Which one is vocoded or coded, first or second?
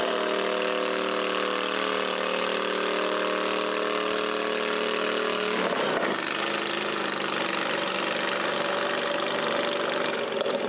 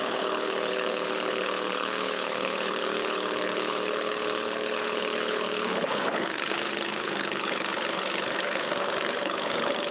second